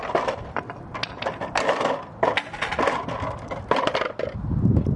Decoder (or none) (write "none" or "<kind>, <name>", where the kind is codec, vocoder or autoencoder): none